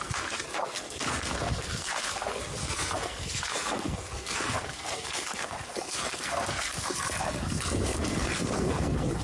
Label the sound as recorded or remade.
remade